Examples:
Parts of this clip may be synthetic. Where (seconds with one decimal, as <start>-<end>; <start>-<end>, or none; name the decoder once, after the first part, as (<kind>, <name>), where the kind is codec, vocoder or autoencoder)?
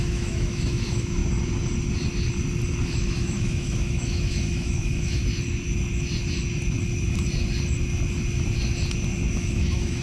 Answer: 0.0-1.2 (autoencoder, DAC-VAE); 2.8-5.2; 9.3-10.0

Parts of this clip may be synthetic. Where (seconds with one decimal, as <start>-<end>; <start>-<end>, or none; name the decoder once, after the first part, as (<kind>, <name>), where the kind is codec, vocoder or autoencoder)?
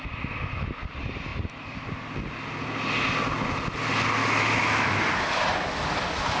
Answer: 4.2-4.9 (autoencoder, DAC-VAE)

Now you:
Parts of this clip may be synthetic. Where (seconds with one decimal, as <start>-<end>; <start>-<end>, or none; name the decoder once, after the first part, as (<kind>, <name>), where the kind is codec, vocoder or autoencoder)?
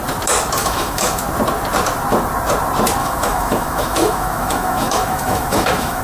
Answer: 0.6-1.2 (autoencoder, DAC-VAE); 3.0-6.0